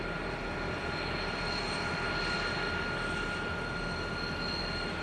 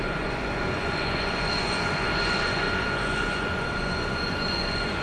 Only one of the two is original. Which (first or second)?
first